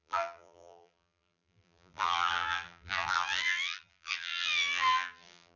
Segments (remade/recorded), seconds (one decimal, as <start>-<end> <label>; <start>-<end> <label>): 0.0-5.6 remade